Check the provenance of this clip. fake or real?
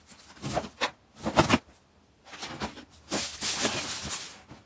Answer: real